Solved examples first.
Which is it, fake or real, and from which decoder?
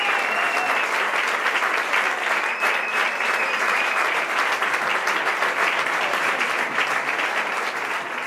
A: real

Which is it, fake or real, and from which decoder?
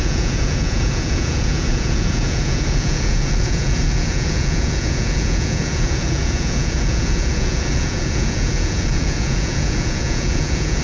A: fake, vocoder, Vocos